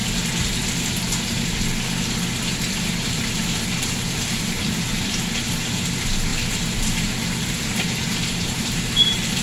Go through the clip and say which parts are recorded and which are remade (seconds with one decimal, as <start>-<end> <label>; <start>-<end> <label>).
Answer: 0.0-2.8 recorded; 2.8-9.4 remade